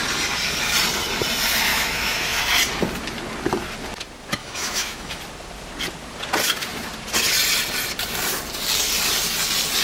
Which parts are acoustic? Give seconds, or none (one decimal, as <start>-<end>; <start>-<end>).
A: 0.0-1.7; 2.4-4.4; 5.2-9.8